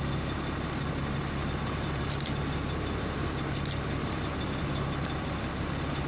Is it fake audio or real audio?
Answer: real